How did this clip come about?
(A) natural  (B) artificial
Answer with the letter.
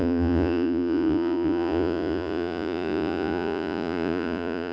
B